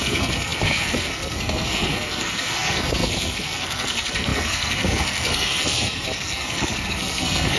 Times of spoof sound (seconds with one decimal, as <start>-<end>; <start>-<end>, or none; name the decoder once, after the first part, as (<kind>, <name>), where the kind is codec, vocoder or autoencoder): 0.0-7.6 (codec, SNAC)